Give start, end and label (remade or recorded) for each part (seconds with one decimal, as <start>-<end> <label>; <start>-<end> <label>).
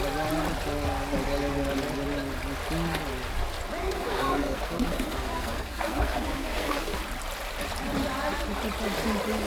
0.0-3.8 recorded; 3.8-7.0 remade; 7.0-9.5 recorded